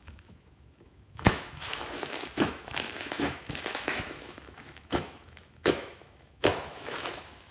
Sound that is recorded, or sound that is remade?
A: remade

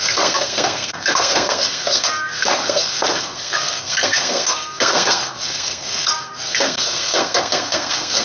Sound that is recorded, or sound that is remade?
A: remade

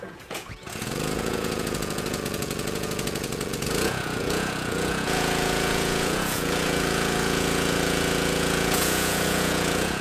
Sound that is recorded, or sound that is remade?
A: remade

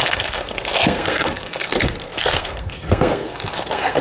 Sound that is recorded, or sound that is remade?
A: remade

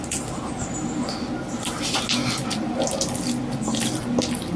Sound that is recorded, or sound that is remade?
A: recorded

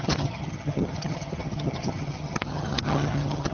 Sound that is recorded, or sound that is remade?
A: remade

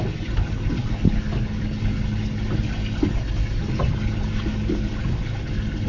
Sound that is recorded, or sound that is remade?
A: recorded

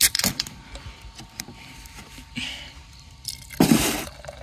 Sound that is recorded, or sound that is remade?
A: recorded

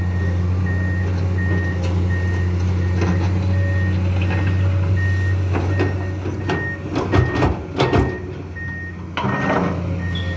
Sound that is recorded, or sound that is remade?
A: recorded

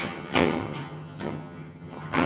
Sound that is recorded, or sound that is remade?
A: remade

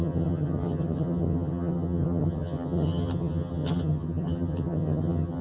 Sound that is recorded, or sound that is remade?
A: remade